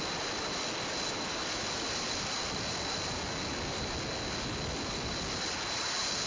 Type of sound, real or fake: real